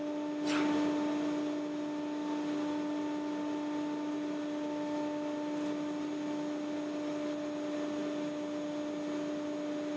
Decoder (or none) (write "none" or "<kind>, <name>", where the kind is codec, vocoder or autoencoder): none